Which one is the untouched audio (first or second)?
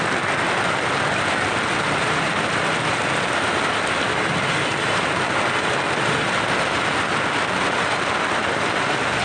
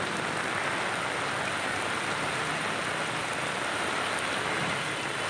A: second